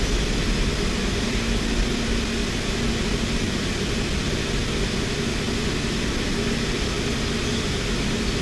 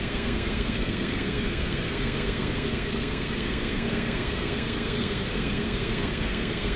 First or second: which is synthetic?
second